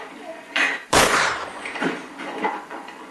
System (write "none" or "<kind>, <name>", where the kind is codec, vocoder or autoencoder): vocoder, Vocos